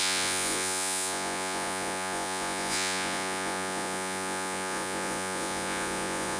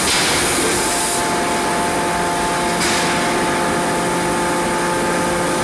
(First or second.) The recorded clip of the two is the second